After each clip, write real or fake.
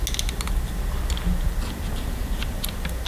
real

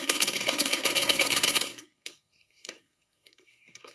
fake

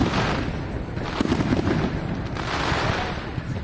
real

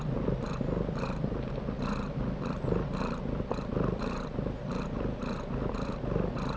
real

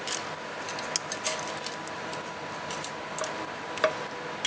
real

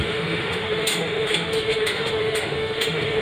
fake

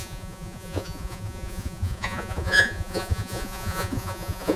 fake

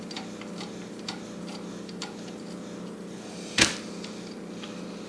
real